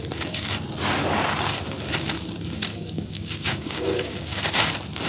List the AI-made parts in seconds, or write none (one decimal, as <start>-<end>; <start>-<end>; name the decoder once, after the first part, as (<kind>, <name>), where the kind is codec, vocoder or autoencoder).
2.7-4.4 (codec, DAC)